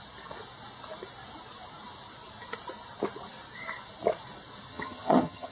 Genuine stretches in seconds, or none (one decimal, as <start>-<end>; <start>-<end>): 0.0-4.7